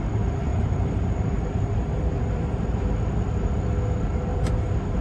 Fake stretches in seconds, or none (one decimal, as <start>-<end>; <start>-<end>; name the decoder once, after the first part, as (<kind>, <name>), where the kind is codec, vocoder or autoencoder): 0.5-3.5 (vocoder, BigVGAN v2); 4.3-5.0